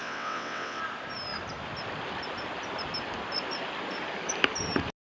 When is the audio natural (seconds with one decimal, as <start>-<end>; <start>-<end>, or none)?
0.8-5.0